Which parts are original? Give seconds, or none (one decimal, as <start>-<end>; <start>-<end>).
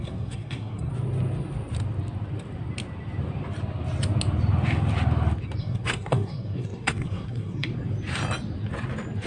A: 0.9-5.6; 7.7-9.3